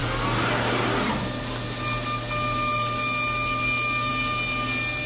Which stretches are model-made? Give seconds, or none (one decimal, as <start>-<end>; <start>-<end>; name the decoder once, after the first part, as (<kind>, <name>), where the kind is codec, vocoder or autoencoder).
none